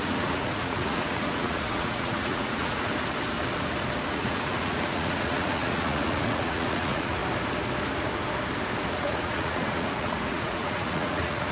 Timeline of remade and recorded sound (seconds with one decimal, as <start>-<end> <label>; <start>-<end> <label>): 0.0-2.9 remade; 2.9-4.1 recorded; 4.1-7.2 remade; 7.2-8.9 recorded; 8.9-11.5 remade